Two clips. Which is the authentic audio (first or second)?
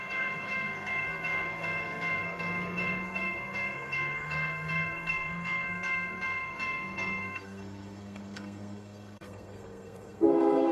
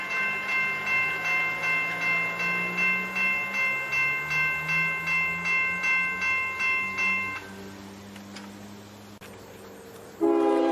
second